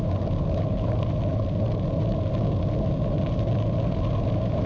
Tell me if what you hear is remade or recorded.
recorded